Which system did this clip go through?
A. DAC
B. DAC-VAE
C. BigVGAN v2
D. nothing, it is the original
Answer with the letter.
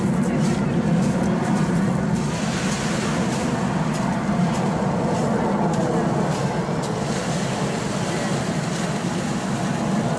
D